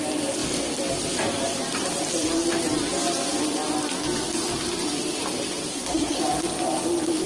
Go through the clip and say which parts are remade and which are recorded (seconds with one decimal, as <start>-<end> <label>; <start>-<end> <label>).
0.0-5.7 recorded; 5.7-6.2 remade; 6.2-7.3 recorded